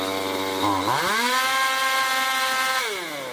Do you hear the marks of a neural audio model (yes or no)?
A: no